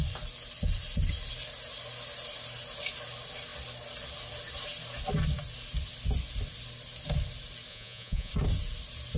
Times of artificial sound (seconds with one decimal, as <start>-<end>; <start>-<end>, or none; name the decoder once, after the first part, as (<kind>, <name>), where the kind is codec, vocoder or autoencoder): 7.7-8.3 (vocoder, Vocos)